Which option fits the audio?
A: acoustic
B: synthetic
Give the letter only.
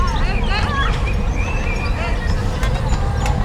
A